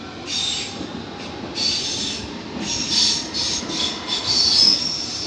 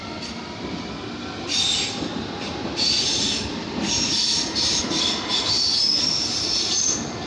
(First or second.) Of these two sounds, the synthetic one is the second